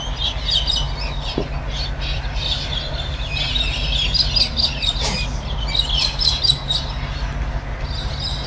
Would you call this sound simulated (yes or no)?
no